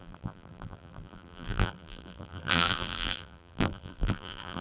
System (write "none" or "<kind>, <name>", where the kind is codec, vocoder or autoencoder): vocoder, BigVGAN v2